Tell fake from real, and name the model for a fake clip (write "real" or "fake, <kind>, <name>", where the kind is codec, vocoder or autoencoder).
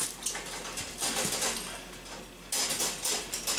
real